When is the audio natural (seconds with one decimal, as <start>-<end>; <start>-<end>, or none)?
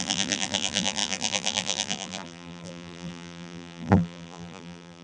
none